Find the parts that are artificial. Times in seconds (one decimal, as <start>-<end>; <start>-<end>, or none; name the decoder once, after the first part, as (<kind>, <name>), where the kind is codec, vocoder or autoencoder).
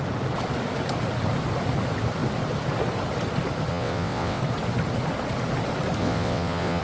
3.7-4.4 (vocoder, WaveNeXt); 6.0-6.8